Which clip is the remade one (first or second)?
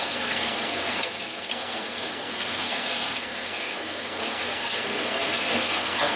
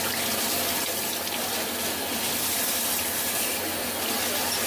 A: first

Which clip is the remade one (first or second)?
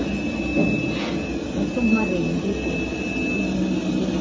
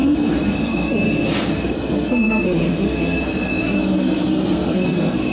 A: second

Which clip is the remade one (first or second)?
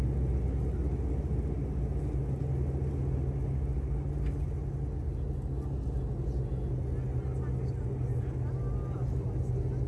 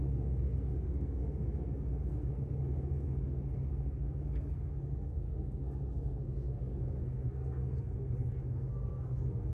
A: second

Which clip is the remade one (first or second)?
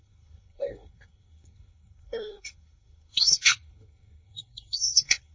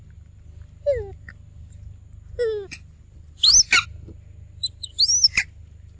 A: first